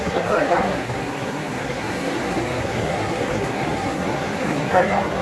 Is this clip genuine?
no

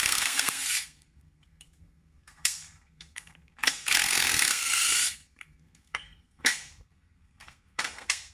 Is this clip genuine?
no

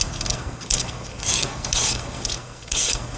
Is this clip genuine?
no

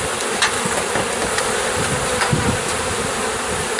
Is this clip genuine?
yes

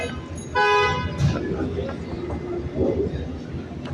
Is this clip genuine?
yes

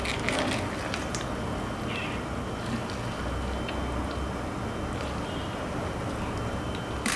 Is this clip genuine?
yes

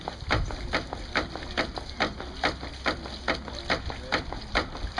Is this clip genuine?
yes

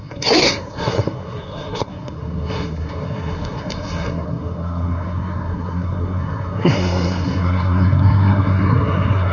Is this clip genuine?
no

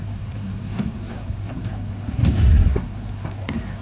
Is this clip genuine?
no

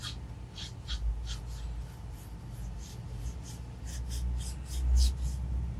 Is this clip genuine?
yes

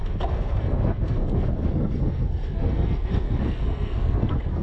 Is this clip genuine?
no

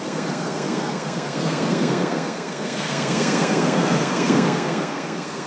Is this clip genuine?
no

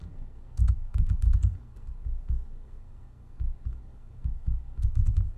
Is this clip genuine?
no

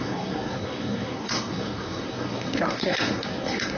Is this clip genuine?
no